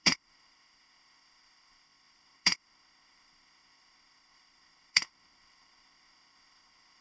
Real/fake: fake